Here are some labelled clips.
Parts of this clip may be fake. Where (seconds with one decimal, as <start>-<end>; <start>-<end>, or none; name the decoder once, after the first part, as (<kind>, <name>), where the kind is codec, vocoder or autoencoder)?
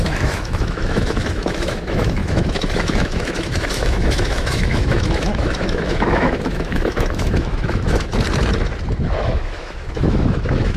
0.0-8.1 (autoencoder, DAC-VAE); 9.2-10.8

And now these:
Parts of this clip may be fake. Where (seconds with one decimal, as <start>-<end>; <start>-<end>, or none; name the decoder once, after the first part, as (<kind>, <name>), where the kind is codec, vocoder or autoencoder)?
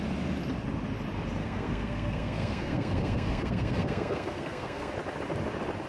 1.4-4.9 (codec, SNAC)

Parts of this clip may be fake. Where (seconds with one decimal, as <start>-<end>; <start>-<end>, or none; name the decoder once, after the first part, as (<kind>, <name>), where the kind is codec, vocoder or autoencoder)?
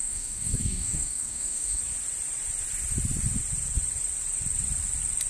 0.0-1.8 (codec, DAC)